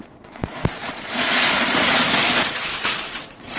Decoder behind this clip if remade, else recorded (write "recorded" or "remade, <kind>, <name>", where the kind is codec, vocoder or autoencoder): remade, vocoder, Vocos